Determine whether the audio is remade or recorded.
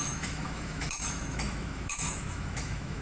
remade